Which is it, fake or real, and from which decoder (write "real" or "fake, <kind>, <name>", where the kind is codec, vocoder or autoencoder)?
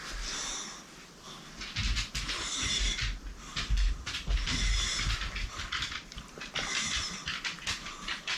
real